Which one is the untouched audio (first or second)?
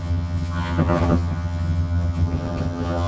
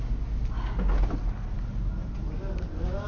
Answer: second